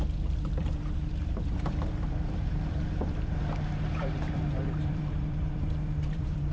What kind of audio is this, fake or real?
fake